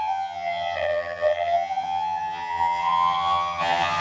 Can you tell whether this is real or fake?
fake